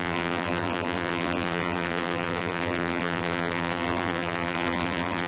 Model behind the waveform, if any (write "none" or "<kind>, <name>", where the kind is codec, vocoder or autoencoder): vocoder, BigVGAN v2